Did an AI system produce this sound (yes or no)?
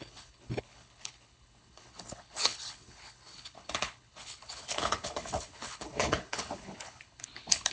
yes